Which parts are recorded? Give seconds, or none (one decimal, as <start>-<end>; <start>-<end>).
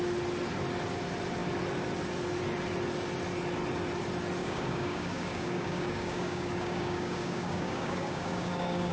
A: 0.0-4.4